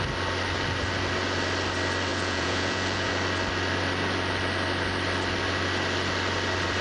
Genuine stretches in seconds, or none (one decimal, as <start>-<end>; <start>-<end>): 0.0-2.1; 3.1-6.8